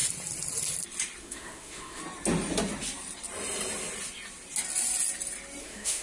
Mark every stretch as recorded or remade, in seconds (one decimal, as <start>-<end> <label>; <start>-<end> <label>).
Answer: 0.0-1.2 recorded; 1.2-2.0 remade; 2.0-5.6 recorded; 5.6-6.0 remade